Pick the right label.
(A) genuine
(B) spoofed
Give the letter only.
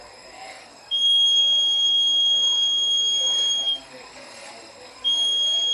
B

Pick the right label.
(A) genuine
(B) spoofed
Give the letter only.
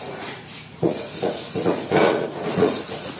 B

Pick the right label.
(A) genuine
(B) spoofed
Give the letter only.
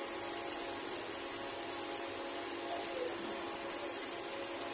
A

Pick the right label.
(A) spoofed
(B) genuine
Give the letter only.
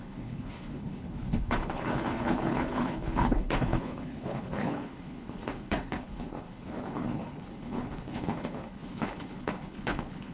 A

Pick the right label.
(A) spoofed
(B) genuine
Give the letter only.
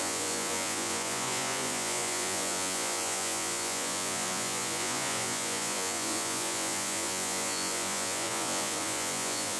A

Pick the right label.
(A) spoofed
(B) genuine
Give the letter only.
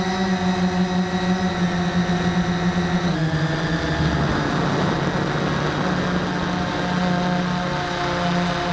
B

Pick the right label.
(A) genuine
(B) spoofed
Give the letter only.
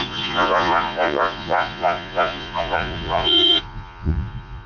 B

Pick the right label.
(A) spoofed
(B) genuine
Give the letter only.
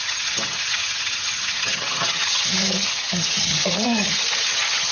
A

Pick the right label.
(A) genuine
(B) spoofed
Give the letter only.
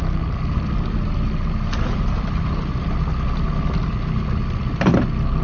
A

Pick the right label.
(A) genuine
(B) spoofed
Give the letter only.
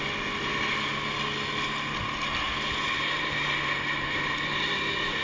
A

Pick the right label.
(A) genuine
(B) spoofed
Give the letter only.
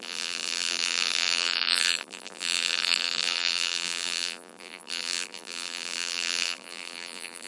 B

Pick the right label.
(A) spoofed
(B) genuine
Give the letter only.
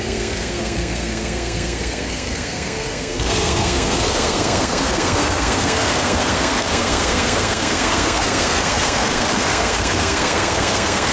A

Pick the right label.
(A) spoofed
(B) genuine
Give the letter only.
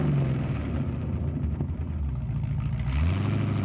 B